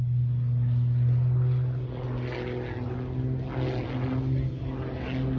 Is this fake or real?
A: real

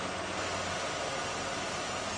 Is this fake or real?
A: real